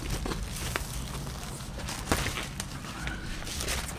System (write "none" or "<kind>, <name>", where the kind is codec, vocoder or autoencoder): none